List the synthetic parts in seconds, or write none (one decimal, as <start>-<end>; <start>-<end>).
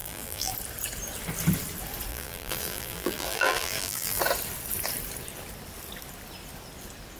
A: 0.0-0.5; 2.1-4.2